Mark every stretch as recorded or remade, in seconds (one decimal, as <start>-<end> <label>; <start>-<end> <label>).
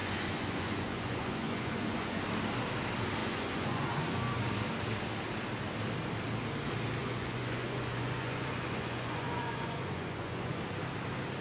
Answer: 0.0-2.2 remade; 2.2-3.2 recorded; 3.2-4.4 remade; 4.4-7.0 recorded; 7.0-10.6 remade; 10.6-11.4 recorded